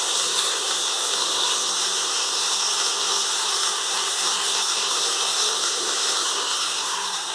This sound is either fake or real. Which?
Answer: fake